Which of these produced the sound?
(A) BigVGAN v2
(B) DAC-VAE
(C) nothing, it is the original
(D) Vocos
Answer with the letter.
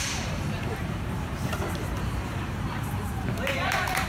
A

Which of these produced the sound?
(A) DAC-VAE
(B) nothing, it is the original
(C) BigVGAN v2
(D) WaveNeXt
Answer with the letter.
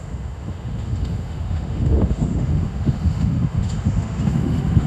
A